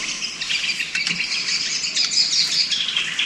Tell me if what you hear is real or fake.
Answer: real